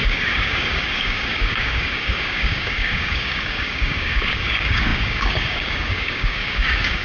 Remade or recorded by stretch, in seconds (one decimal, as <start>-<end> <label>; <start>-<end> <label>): 0.0-7.0 remade